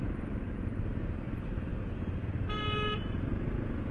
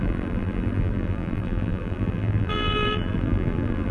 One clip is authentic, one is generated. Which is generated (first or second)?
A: second